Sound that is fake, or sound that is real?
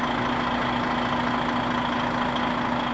real